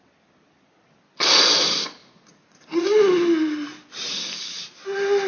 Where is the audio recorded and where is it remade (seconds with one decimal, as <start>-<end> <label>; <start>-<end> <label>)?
0.0-4.1 recorded; 4.1-4.6 remade; 4.6-5.3 recorded